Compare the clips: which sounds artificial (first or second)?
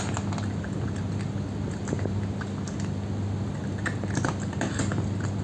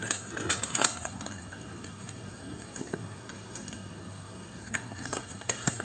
second